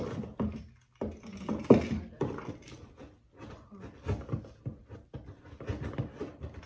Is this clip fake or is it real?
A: real